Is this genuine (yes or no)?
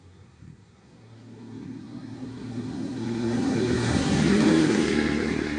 no